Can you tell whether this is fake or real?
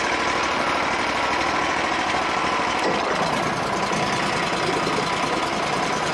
real